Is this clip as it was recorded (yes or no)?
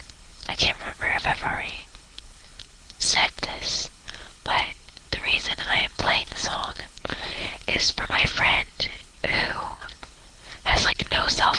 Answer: no